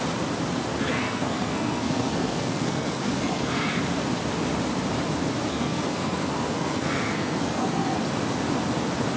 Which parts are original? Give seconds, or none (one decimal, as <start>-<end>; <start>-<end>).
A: 0.0-0.8; 3.8-5.5; 8.0-9.2